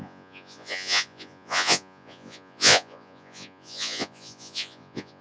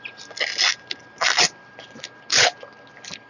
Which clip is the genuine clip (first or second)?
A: second